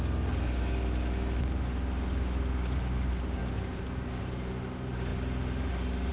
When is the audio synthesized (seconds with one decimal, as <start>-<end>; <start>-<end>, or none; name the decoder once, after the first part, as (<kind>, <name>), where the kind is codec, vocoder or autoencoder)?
3.4-4.2 (codec, DAC)